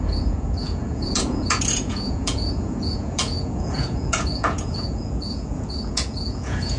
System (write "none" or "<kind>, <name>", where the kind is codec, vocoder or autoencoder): vocoder, Vocos